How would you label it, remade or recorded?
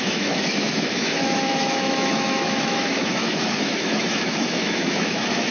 remade